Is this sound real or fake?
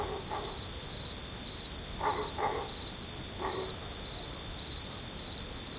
real